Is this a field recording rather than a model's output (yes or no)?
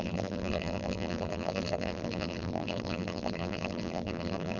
no